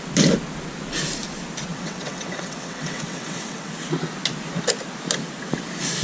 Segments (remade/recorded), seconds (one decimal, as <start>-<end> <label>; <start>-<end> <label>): 0.0-1.7 recorded; 1.7-3.7 remade; 3.7-6.0 recorded